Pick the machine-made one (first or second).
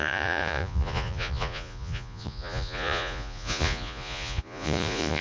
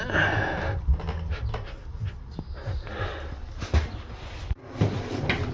first